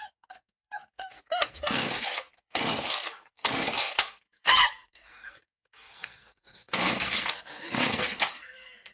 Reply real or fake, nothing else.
fake